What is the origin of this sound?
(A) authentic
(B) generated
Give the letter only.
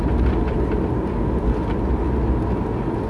A